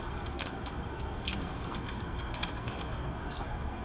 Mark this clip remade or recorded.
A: remade